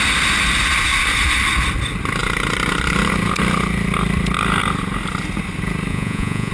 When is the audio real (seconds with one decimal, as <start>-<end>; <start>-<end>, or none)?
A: 0.0-5.9